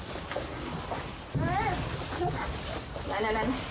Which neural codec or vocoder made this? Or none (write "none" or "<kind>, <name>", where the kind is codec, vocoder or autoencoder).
none